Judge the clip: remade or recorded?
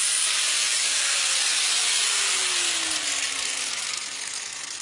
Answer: recorded